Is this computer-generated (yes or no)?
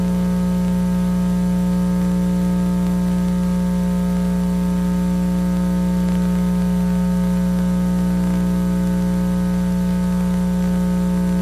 no